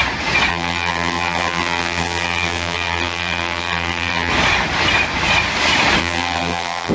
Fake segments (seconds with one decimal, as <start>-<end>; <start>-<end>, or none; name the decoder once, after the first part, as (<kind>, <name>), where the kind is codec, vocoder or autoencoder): 0.5-4.3 (vocoder, BigVGAN v2); 6.0-6.9